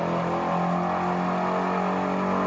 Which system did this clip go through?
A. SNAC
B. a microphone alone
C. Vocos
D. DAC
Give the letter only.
B